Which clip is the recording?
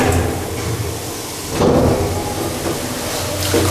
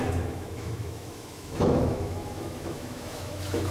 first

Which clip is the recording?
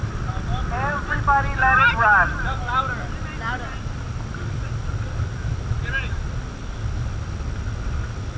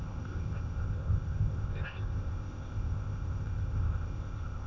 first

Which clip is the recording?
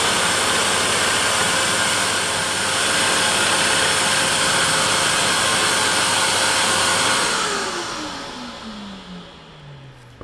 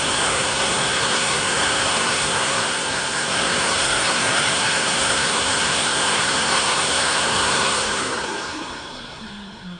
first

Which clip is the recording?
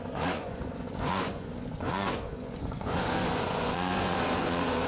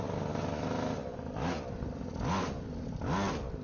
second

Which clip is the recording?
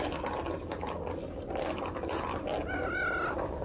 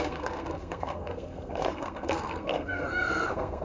first